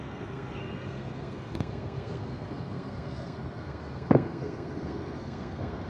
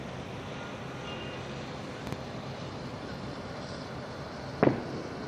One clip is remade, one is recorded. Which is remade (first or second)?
first